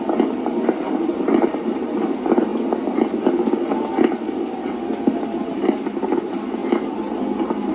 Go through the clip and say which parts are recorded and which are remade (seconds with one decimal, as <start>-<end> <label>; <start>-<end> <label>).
0.0-7.7 recorded